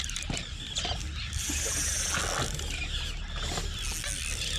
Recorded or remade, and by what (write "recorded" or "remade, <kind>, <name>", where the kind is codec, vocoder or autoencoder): recorded